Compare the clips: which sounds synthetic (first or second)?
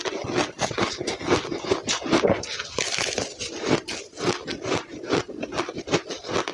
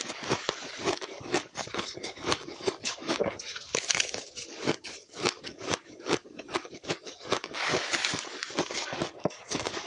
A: second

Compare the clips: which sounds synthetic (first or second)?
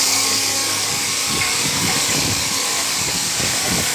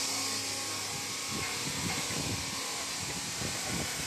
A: first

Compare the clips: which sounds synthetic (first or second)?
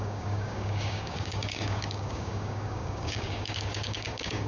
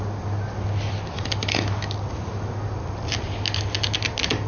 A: first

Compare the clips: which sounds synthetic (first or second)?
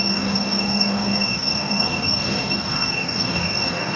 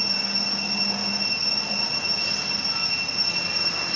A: first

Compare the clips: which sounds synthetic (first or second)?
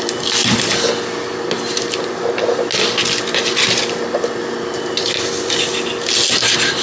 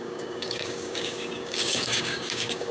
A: second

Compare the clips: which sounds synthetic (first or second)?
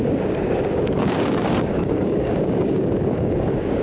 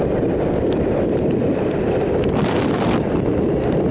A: first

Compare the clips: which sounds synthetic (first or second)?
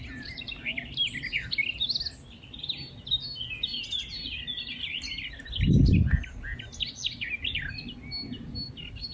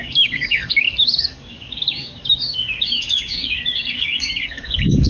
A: second